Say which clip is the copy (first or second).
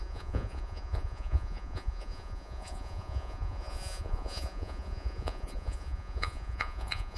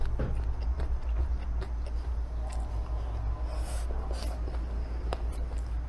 first